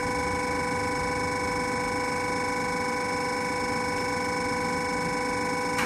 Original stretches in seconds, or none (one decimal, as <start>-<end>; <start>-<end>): 0.0-5.9